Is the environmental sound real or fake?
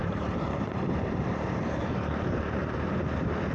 fake